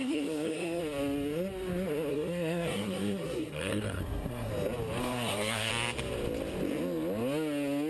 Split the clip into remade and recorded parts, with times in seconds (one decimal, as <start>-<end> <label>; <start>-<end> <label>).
0.0-0.8 remade; 0.8-2.1 recorded; 2.1-4.5 remade; 4.5-5.0 recorded; 5.0-5.7 remade; 5.7-7.9 recorded